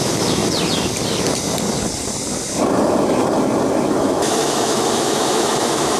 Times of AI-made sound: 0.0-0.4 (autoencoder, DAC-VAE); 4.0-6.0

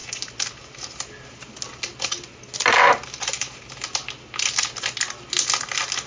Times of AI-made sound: none

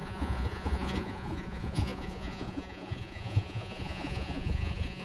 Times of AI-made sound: 0.0-5.0 (vocoder, Vocos)

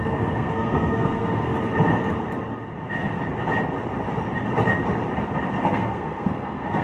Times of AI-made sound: 0.0-1.5 (codec, SNAC); 5.6-6.8